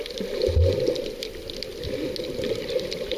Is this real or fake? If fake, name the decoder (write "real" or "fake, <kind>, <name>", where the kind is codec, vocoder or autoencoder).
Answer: real